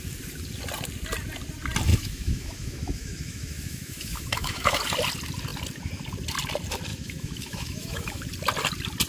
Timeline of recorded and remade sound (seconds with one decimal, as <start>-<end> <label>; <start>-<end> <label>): 0.0-1.9 recorded; 1.9-4.8 remade; 4.8-6.9 recorded; 6.9-8.2 remade; 8.2-9.1 recorded